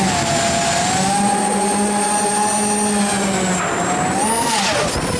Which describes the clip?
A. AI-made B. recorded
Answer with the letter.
B